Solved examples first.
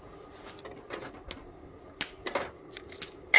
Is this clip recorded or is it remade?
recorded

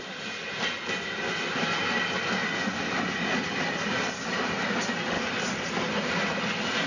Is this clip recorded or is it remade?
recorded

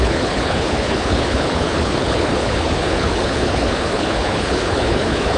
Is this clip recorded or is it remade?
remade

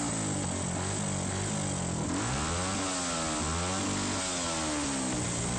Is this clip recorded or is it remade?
recorded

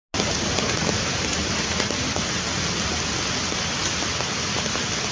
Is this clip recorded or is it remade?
recorded